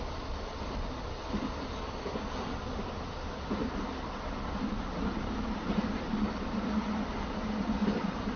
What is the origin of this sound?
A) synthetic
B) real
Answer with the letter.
B